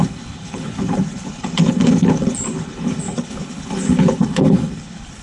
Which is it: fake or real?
fake